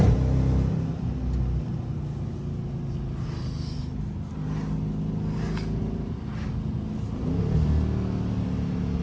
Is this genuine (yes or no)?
yes